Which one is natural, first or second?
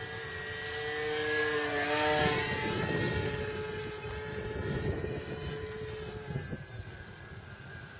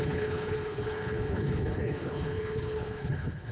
first